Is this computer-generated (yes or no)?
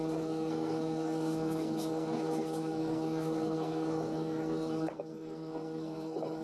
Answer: yes